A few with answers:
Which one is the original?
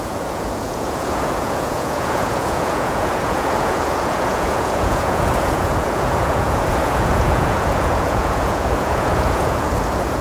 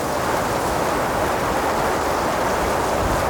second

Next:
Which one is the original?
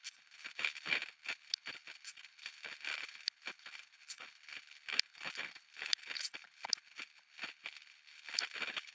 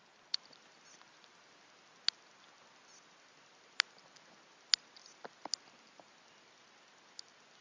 second